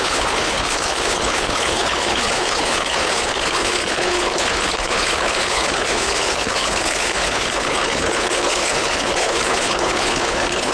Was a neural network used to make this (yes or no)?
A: yes